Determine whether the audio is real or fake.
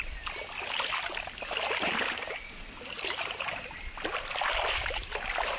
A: real